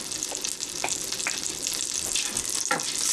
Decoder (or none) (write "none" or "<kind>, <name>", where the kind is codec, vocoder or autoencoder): none